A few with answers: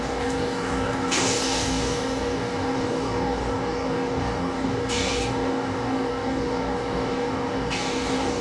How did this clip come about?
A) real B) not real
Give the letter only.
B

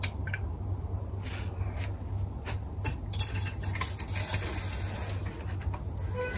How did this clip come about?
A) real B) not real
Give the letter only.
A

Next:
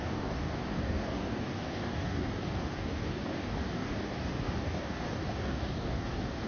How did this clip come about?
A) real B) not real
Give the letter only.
B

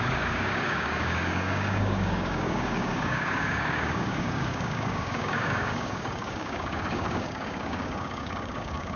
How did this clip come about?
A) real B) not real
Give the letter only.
B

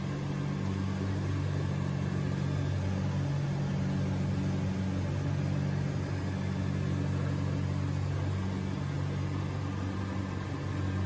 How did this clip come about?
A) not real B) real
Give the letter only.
B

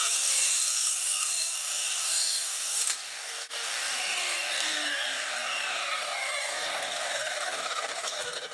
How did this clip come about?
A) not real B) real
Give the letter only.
A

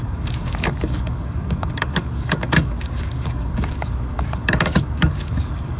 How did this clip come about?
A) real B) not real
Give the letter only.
B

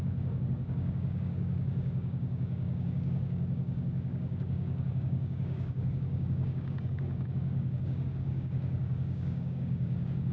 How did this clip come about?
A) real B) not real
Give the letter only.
B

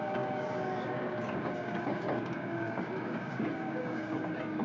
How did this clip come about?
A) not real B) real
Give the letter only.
A